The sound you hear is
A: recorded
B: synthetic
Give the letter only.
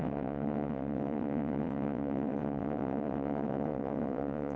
B